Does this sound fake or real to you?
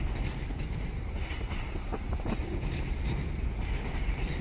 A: real